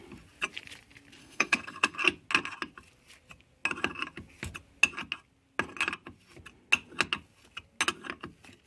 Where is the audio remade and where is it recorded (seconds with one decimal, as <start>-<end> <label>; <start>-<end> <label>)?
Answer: 0.0-1.2 recorded; 1.2-2.0 remade; 2.0-8.7 recorded